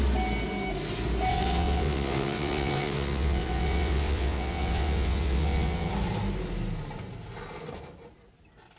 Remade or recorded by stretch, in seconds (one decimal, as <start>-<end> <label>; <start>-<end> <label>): 0.0-1.3 recorded; 1.3-5.9 remade; 5.9-8.8 recorded